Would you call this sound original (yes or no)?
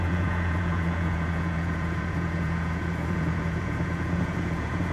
no